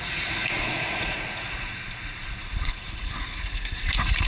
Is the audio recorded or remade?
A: remade